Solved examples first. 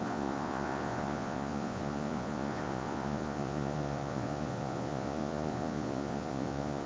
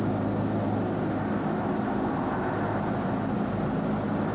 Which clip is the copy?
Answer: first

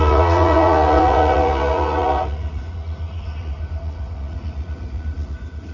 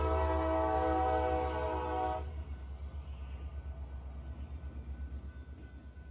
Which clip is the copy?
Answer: first